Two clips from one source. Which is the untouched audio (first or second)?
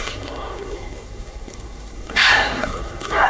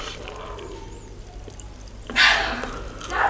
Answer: second